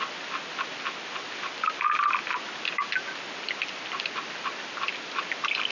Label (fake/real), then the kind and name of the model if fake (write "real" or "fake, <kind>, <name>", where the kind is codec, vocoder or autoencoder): real